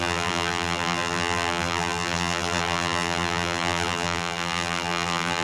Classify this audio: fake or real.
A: fake